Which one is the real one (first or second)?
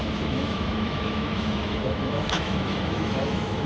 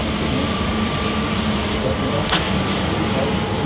second